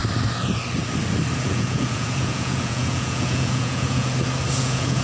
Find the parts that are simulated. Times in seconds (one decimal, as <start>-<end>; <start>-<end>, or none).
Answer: 1.4-4.1; 4.6-5.0